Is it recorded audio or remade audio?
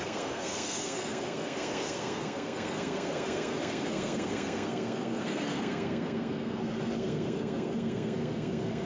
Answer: remade